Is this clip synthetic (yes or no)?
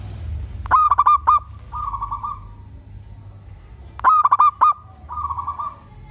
no